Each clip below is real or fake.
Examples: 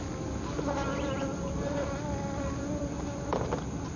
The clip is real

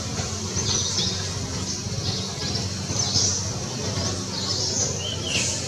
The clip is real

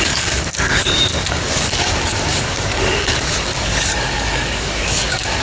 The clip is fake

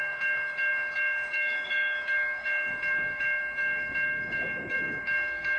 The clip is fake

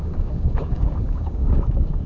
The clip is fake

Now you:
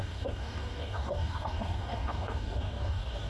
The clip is fake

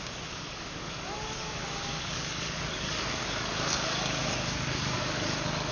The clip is fake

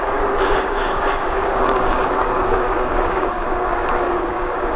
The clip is fake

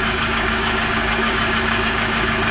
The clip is fake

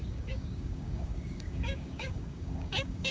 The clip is fake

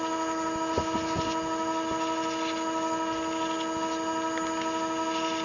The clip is real